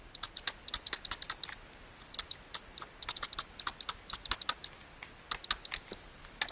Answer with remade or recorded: recorded